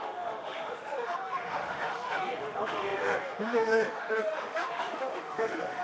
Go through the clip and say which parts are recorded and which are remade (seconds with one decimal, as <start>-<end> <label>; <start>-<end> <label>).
0.0-5.8 remade